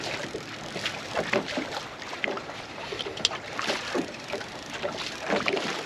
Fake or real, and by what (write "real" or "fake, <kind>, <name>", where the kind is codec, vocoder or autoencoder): real